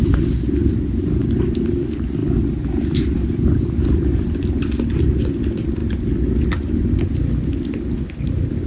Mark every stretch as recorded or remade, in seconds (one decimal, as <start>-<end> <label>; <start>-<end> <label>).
0.0-8.7 recorded